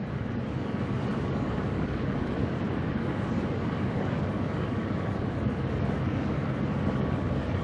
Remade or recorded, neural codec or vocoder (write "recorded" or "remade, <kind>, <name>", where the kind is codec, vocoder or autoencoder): remade, codec, DAC